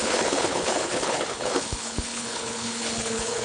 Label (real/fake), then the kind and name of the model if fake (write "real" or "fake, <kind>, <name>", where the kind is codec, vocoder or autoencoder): fake, codec, HILCodec